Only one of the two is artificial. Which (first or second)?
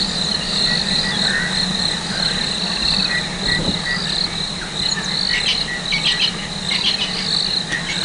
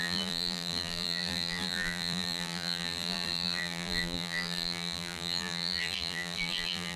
second